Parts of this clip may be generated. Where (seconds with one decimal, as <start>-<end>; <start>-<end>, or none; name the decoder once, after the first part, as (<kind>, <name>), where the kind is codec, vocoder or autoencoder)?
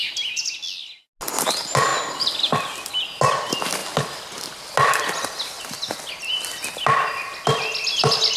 none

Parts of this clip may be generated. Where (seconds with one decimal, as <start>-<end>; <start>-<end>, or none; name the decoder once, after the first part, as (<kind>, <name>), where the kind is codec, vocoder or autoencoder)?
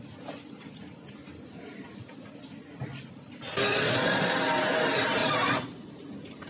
3.7-4.3 (vocoder, Vocos); 5.2-5.9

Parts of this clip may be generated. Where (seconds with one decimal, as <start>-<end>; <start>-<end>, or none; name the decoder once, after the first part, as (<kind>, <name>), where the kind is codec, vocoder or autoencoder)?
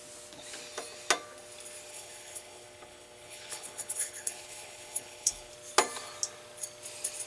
1.9-5.5 (codec, HILCodec)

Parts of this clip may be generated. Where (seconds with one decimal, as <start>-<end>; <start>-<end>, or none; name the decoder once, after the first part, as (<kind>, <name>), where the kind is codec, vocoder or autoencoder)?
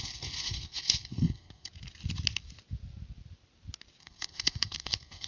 0.0-1.7 (codec, SNAC); 4.0-5.3